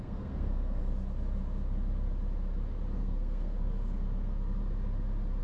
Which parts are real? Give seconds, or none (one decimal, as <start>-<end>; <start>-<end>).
0.8-3.0; 4.6-5.4